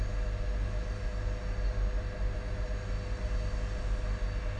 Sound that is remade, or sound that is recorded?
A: recorded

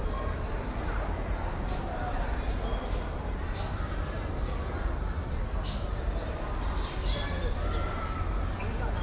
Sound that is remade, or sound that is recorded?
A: recorded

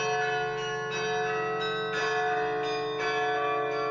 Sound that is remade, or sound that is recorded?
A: recorded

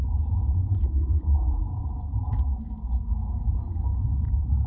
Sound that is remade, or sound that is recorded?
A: remade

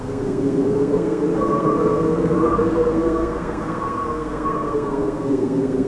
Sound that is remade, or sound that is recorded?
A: remade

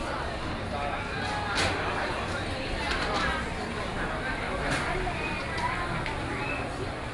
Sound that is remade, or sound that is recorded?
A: recorded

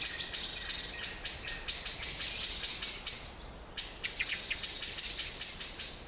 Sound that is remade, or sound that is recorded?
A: recorded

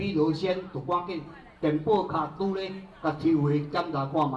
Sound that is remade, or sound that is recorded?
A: recorded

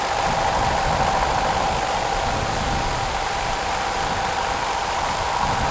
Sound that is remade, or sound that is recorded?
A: recorded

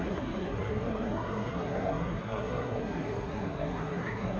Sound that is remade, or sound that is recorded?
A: remade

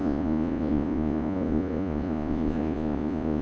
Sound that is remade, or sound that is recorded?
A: remade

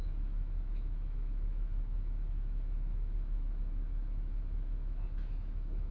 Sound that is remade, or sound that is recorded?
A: remade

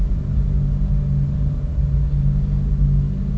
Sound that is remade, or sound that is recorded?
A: recorded